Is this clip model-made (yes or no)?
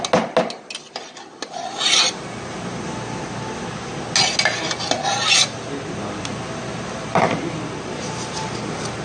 no